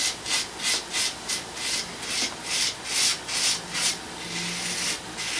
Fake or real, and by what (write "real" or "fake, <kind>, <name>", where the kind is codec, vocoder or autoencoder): real